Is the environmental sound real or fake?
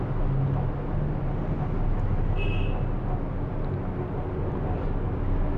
real